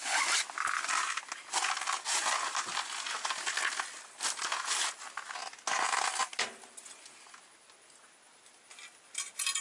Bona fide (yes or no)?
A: yes